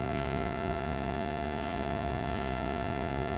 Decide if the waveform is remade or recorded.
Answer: remade